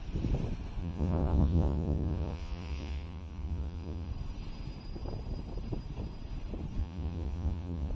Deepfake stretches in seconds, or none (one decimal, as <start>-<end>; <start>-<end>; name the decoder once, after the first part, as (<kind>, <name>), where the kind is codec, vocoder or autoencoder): 0.8-4.1 (vocoder, Vocos); 6.8-7.9